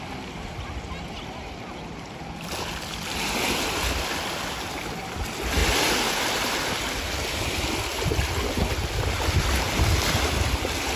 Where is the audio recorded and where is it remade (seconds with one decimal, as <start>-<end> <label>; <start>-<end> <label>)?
0.0-11.0 recorded